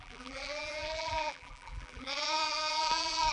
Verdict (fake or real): fake